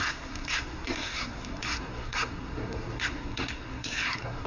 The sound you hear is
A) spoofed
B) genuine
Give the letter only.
A